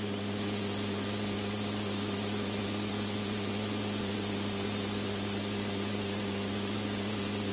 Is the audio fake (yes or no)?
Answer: no